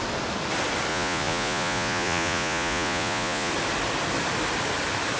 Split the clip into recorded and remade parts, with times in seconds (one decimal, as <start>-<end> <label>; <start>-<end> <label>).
0.0-0.9 recorded; 0.9-3.5 remade; 3.5-5.2 recorded